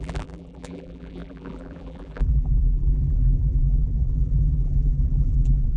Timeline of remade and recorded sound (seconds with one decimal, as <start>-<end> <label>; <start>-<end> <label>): 0.0-5.8 remade

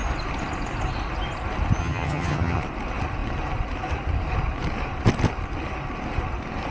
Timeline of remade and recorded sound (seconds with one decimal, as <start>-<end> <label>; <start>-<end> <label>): 0.0-1.8 recorded; 1.8-2.6 remade; 2.6-6.7 recorded

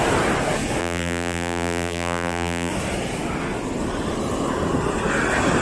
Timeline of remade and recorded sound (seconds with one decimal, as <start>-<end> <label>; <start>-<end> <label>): 0.0-0.8 recorded; 0.8-2.7 remade; 2.7-5.6 recorded

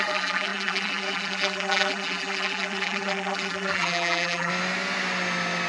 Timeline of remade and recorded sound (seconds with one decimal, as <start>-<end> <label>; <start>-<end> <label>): 0.0-4.5 remade; 4.5-5.7 recorded

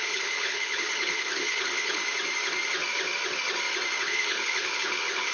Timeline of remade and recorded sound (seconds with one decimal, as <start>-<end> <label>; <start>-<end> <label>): 0.0-2.0 remade; 2.0-4.0 recorded; 4.0-5.3 remade

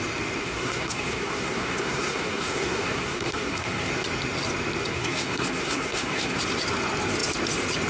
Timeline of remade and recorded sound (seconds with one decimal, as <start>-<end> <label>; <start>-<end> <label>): 0.0-0.4 recorded; 0.4-3.9 remade; 3.9-4.9 recorded; 4.9-6.4 remade; 6.4-7.9 recorded